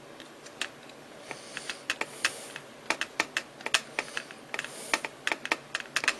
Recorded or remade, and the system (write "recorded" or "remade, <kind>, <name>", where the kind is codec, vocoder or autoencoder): recorded